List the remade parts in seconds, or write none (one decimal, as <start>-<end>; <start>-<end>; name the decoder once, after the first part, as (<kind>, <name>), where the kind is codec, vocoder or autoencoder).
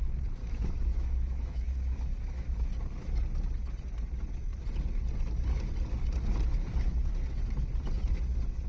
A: 0.4-2.7 (autoencoder, DAC-VAE)